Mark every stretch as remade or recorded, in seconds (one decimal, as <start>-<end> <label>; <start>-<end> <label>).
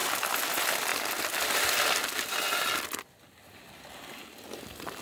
0.0-5.0 recorded